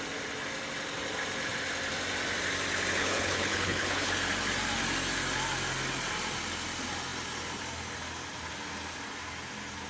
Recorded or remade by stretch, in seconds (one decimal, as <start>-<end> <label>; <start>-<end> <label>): 0.0-3.0 recorded; 3.0-4.1 remade; 4.1-9.9 recorded